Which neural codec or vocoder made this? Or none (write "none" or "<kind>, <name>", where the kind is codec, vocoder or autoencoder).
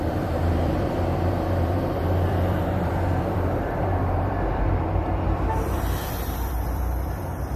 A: vocoder, BigVGAN v2